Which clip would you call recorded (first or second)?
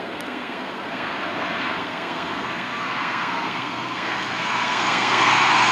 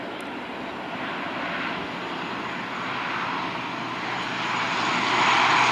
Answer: second